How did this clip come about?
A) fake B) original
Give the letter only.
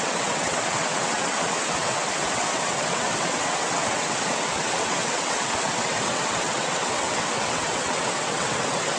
A